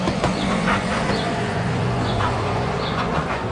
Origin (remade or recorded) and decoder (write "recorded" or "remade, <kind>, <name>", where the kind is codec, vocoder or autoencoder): remade, vocoder, Vocos